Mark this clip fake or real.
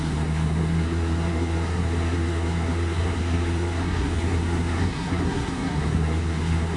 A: fake